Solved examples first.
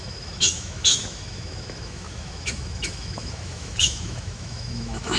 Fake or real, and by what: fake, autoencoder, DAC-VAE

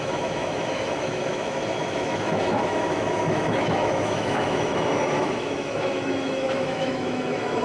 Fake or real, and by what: fake, autoencoder, DAC-VAE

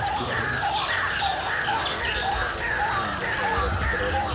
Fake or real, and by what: real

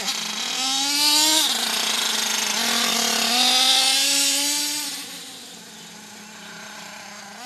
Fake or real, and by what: real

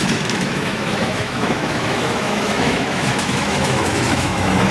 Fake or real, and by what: fake, autoencoder, DAC-VAE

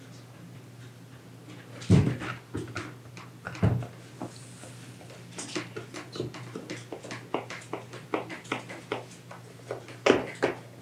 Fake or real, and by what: real